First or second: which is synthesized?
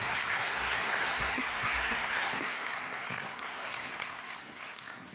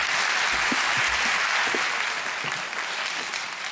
first